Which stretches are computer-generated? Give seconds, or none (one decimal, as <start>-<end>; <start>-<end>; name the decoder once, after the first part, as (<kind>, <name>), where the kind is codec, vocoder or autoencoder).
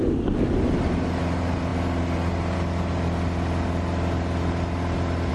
none